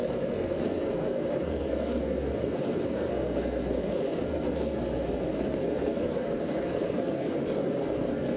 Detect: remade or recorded remade